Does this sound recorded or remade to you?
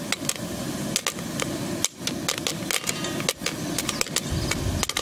recorded